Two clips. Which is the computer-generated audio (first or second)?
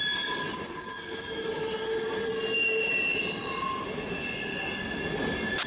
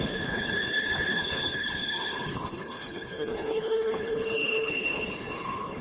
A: second